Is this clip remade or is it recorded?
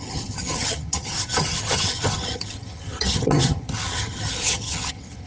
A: remade